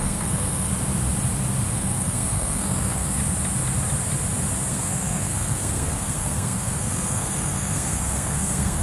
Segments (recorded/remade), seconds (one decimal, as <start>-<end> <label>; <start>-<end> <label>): 0.0-0.7 remade; 0.7-1.7 recorded; 1.7-3.2 remade; 3.2-4.7 recorded; 4.7-8.8 remade